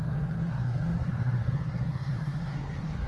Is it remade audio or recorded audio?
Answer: remade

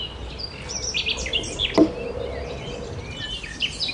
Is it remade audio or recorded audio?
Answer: recorded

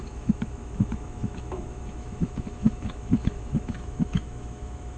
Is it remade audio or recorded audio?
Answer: remade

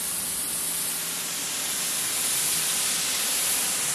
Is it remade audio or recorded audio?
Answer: recorded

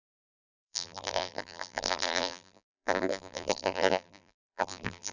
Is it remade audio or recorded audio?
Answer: remade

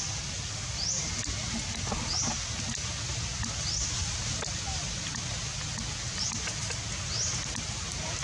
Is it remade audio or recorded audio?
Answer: recorded